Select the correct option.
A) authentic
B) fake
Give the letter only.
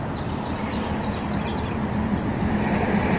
A